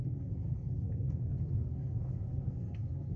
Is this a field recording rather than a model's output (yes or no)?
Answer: no